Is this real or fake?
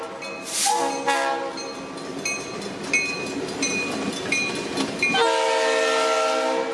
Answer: real